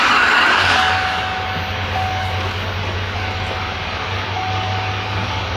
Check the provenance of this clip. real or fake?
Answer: fake